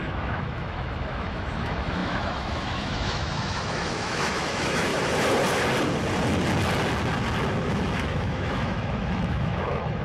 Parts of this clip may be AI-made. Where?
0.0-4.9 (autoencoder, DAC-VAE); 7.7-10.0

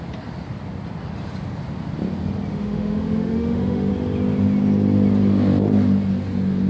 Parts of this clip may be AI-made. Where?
2.5-3.9 (autoencoder, DAC-VAE)

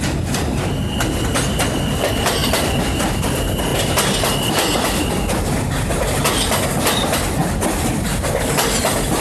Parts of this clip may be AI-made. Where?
none

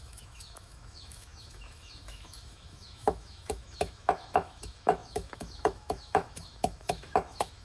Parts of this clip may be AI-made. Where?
0.0-7.6 (autoencoder, DAC-VAE)

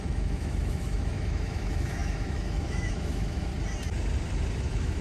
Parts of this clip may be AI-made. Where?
0.0-3.5 (autoencoder, DAC-VAE); 4.6-5.0